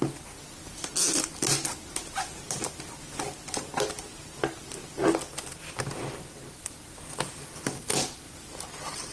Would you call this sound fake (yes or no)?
no